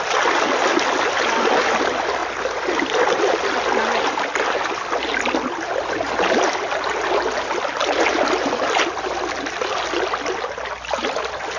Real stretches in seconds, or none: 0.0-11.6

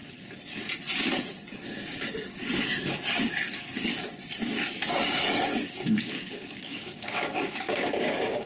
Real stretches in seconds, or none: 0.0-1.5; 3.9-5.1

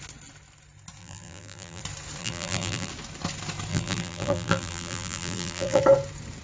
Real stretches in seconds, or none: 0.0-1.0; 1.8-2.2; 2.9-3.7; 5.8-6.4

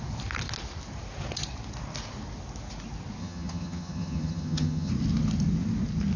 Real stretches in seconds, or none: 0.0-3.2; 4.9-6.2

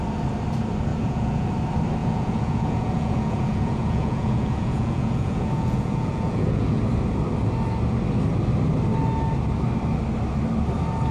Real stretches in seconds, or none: 0.0-0.9; 1.5-2.0; 6.8-11.1

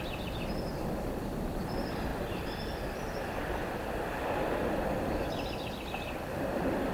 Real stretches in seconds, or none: 0.0-6.9